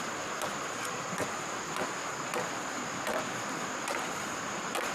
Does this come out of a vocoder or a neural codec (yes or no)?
no